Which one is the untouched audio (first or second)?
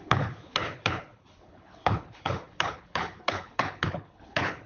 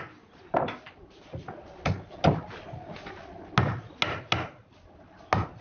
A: second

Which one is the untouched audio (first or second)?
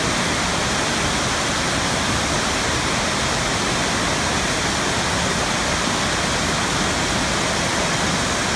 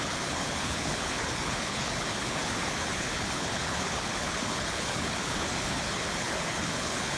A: first